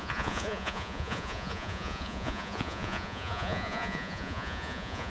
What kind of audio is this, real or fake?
fake